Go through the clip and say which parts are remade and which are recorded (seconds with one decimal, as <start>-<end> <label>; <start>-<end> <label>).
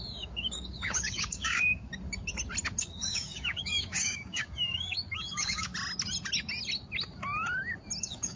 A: 0.0-1.9 remade; 1.9-2.8 recorded; 2.8-5.7 remade; 5.7-8.0 recorded; 8.0-8.4 remade